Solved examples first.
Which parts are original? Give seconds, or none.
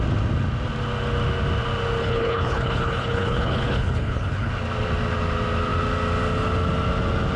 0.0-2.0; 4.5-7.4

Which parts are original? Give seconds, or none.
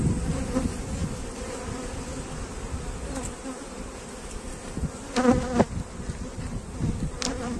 0.0-7.6